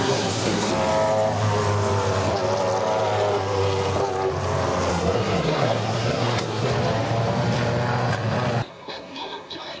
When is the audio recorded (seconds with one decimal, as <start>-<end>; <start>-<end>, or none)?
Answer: 0.7-4.9; 6.7-8.7